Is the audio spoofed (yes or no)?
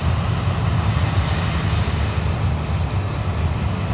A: no